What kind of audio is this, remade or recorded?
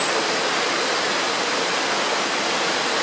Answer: recorded